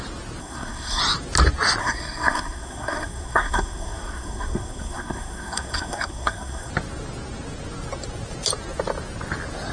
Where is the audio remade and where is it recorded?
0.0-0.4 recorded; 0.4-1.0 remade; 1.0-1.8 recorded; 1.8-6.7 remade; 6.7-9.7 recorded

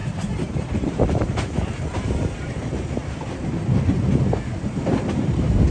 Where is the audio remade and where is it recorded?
0.0-3.0 remade; 3.0-4.7 recorded; 4.7-5.7 remade

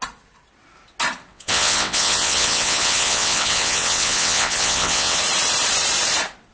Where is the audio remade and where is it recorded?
0.0-1.3 recorded; 1.3-5.2 remade; 5.2-6.5 recorded

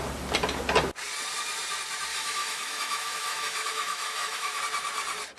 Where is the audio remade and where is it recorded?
0.0-2.1 recorded; 2.1-4.6 remade; 4.6-5.4 recorded

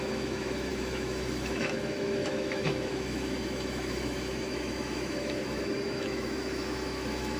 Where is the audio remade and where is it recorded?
0.0-7.4 remade